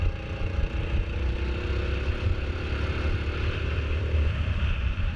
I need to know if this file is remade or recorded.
recorded